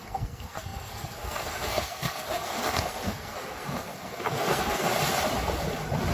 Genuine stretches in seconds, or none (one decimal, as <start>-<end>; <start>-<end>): 4.9-6.1